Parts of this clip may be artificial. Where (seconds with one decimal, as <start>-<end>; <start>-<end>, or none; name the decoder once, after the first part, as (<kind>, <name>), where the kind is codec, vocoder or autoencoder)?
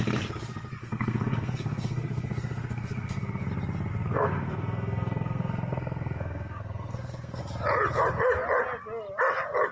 0.8-3.5 (codec, SNAC); 3.9-7.4